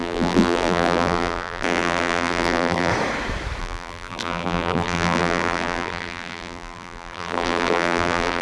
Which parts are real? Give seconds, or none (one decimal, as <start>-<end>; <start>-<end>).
2.9-3.6